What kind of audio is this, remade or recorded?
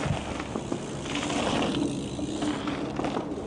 recorded